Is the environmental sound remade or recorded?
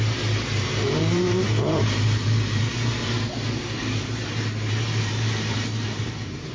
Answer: remade